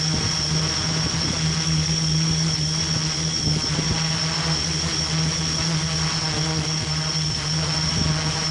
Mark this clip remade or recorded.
recorded